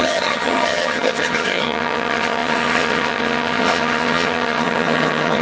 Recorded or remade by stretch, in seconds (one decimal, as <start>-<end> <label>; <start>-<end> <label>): 0.0-5.4 remade